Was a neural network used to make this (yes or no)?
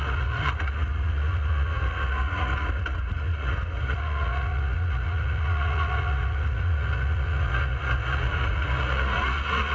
yes